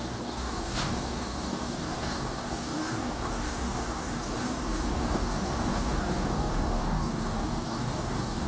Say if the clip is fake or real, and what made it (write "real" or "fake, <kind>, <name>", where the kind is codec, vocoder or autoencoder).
fake, codec, DAC